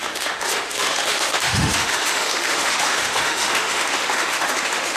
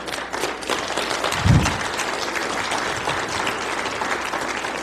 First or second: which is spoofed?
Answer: first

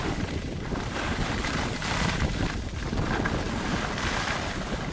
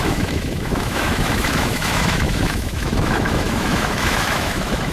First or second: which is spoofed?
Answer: second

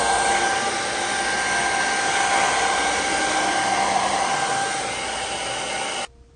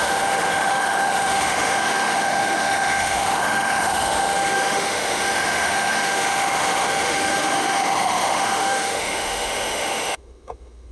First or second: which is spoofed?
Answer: second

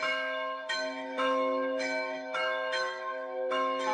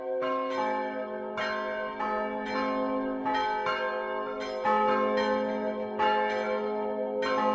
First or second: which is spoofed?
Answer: first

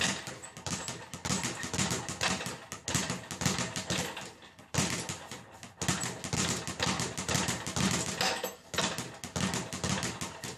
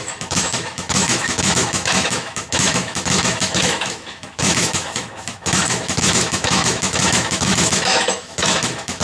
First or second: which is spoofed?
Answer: second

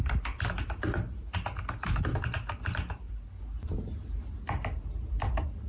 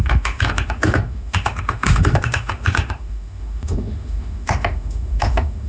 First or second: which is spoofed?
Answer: second